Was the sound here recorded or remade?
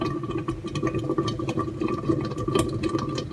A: recorded